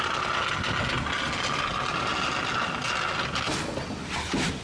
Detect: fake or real real